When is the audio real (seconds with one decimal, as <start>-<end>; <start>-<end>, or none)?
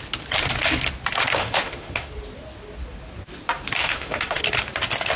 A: 0.0-1.4; 2.1-3.8; 4.4-5.2